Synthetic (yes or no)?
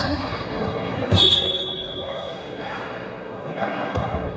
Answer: yes